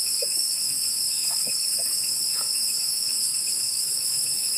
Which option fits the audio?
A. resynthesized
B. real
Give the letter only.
A